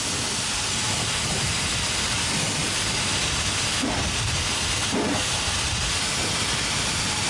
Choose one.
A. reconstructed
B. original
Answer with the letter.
A